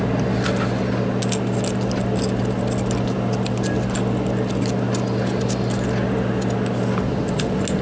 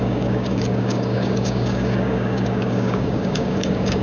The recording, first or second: first